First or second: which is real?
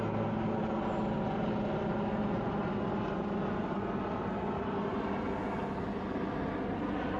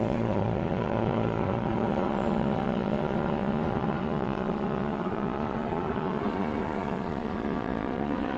first